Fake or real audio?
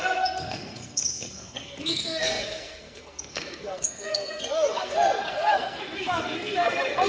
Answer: fake